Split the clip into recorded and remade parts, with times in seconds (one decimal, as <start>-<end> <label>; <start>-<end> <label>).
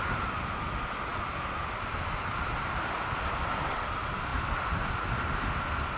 0.0-6.0 recorded